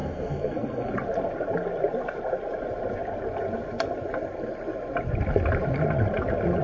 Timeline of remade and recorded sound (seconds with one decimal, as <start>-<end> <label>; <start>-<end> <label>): 0.0-0.9 remade; 0.9-6.6 recorded